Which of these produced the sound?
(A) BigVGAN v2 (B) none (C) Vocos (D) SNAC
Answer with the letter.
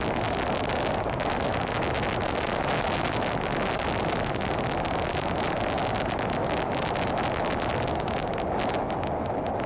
B